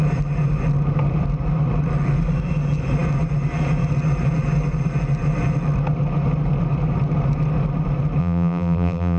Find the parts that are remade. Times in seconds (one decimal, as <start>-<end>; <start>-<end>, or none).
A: 8.2-9.2